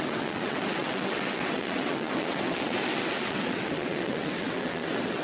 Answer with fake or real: fake